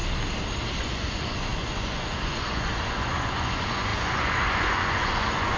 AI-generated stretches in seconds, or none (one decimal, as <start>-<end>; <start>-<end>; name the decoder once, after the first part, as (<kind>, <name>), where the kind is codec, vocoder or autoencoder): 0.8-5.6 (vocoder, Vocos)